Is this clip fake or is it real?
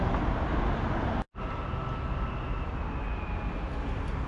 real